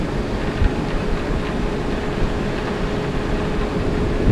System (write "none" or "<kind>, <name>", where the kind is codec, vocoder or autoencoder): none